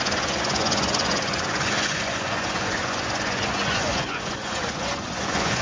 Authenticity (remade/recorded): remade